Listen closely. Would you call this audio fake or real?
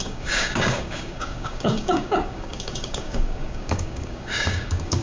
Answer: fake